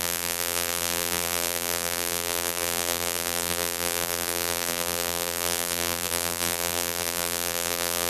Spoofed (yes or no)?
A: yes